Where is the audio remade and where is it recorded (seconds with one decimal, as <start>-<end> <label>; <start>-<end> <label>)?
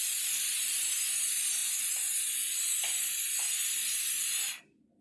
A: 0.0-5.0 recorded